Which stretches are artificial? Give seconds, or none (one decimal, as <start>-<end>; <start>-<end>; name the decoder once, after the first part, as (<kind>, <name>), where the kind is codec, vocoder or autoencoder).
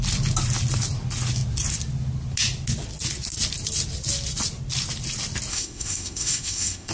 5.5-6.9 (autoencoder, DAC-VAE)